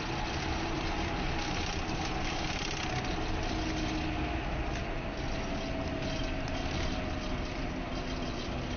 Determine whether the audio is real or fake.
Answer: real